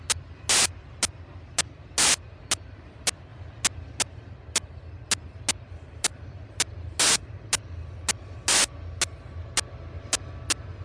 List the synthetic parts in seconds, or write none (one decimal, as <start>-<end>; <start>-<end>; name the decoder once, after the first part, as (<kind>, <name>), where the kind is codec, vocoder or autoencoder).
none